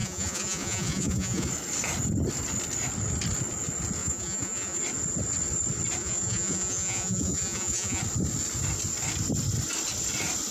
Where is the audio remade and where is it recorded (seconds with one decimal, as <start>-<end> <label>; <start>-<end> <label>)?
0.0-1.5 remade; 1.5-4.0 recorded; 4.0-4.8 remade; 4.8-6.0 recorded; 6.0-8.0 remade; 8.0-10.5 recorded